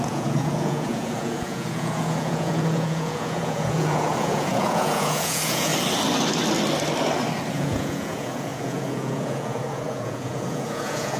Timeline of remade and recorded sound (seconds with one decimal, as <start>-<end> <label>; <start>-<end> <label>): 0.0-5.7 remade; 5.7-7.5 recorded; 7.5-11.2 remade